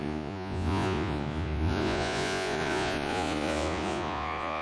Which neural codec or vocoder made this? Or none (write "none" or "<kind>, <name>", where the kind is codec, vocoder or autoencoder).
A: vocoder, Vocos